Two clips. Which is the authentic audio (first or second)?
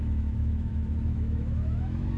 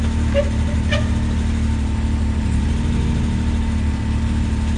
second